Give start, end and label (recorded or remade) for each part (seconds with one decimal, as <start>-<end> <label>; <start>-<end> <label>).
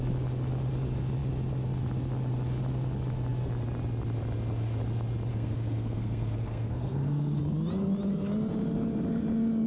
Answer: 0.0-5.3 recorded; 5.3-7.4 remade; 7.4-9.7 recorded